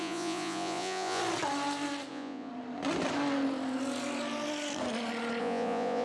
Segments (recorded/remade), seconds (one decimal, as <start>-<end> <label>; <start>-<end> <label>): 0.0-1.2 remade; 1.2-2.1 recorded; 2.1-2.5 remade; 2.5-5.4 recorded; 5.4-6.0 remade